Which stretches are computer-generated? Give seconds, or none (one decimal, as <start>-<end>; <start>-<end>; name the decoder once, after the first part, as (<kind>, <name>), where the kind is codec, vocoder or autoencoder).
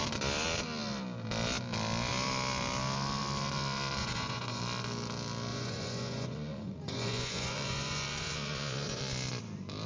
4.0-4.6 (vocoder, Vocos); 5.5-9.0